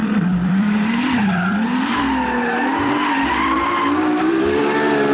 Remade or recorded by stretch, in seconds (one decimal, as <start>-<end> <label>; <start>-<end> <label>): 0.0-2.0 remade; 2.0-2.7 recorded; 2.7-4.6 remade; 4.6-5.1 recorded